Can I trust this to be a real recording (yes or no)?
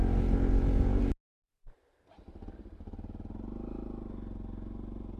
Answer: yes